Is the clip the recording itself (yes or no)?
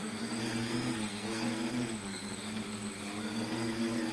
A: no